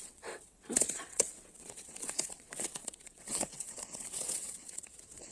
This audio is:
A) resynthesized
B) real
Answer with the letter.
A